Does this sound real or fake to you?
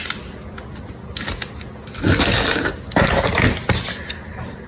real